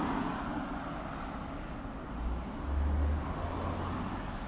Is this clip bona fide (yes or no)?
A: yes